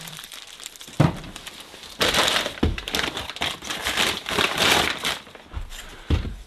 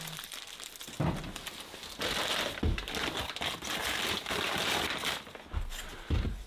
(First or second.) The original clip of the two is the second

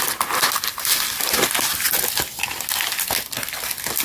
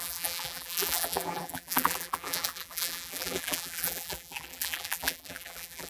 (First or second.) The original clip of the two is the first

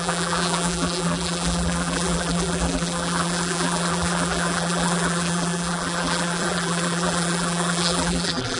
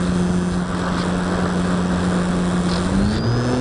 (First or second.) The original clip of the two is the second